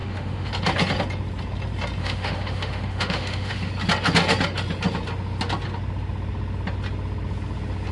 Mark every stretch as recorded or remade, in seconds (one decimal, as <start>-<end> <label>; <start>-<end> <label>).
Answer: 0.0-0.5 remade; 0.5-2.0 recorded; 2.0-3.7 remade; 3.7-7.9 recorded